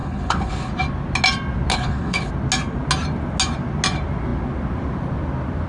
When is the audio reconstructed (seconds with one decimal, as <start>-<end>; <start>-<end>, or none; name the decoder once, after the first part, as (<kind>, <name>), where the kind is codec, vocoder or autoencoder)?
0.0-0.7 (codec, HILCodec); 1.7-2.3